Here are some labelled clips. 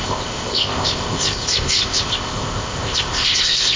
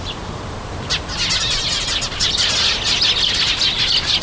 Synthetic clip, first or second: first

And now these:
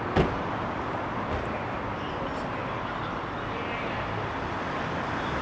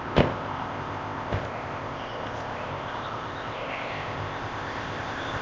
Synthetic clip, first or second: second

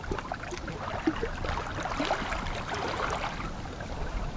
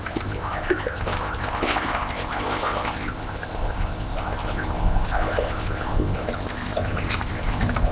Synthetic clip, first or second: second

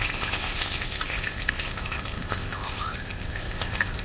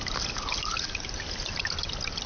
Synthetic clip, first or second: first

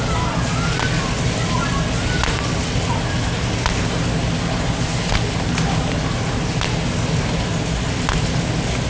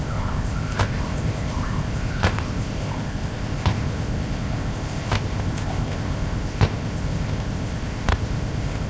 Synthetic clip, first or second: second